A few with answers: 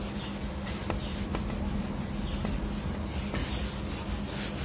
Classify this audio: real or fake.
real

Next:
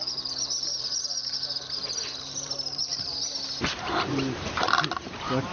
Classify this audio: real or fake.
fake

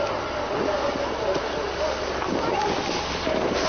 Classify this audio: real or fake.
real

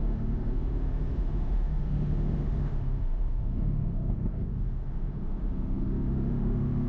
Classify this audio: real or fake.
fake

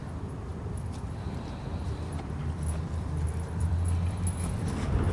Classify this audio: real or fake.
fake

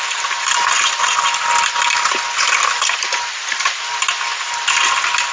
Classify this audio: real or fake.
real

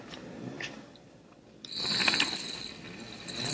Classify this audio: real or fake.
real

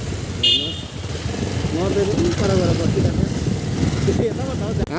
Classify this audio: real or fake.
real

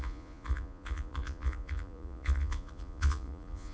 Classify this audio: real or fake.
fake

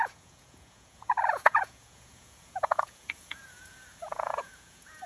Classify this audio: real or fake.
fake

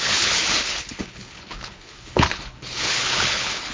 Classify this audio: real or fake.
fake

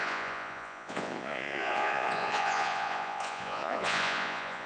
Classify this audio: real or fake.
fake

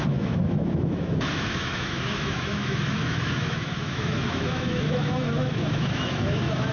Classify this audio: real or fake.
fake